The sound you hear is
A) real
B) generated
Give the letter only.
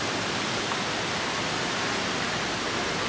A